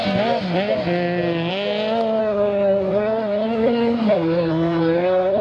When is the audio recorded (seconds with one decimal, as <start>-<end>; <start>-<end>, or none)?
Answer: 0.0-2.2